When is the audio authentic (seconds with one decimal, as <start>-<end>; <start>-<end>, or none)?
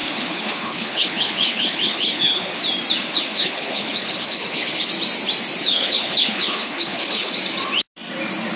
2.6-3.1; 4.9-5.6; 7.3-8.6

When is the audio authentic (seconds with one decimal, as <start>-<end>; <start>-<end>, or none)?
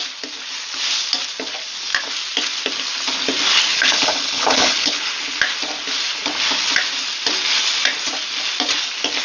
0.0-3.7; 5.1-9.2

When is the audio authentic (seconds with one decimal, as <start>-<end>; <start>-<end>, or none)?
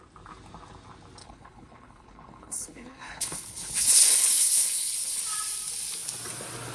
0.0-1.2; 5.2-6.7